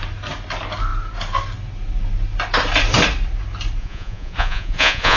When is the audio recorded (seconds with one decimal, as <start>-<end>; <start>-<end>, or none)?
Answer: 0.0-3.8